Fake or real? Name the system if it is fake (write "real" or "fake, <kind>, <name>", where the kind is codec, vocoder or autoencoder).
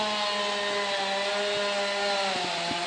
real